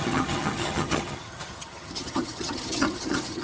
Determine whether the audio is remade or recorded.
remade